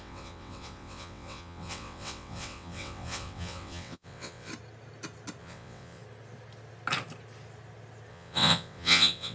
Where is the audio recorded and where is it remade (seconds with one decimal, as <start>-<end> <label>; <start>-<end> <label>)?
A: 0.0-4.5 remade; 4.5-5.4 recorded; 5.4-6.0 remade; 6.0-8.1 recorded; 8.1-9.3 remade